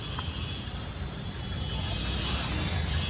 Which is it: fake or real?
real